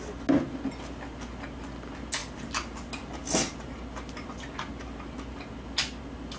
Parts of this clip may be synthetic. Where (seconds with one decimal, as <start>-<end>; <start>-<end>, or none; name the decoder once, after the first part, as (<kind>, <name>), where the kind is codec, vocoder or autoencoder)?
none